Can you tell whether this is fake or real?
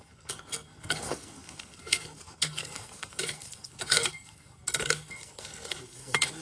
fake